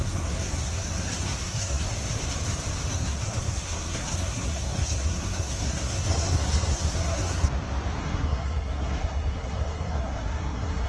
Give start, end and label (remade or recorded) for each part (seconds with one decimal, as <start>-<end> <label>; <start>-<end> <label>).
0.0-1.9 remade; 1.9-2.9 recorded; 2.9-7.5 remade; 7.5-8.0 recorded; 8.0-10.9 remade